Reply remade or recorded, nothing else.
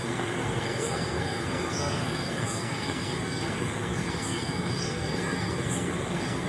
remade